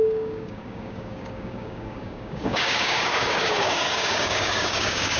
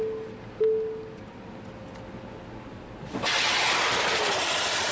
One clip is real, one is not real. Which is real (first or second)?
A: second